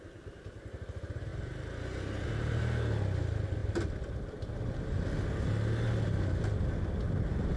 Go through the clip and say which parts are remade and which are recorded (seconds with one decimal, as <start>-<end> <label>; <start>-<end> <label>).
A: 0.0-7.6 recorded